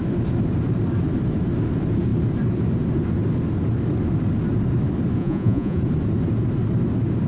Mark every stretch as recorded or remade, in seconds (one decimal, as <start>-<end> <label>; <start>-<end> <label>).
0.0-5.2 recorded; 5.2-5.8 remade; 5.8-7.3 recorded